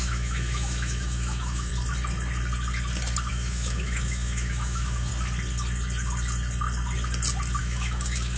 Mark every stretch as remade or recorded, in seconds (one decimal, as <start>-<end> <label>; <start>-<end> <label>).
0.0-1.7 remade; 1.7-3.3 recorded; 3.3-5.1 remade; 5.1-7.6 recorded; 7.6-8.4 remade